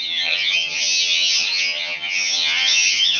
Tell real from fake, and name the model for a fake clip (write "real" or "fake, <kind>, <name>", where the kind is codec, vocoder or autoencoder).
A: fake, vocoder, HiFi-GAN